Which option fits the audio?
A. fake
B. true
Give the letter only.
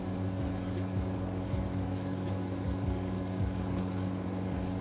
A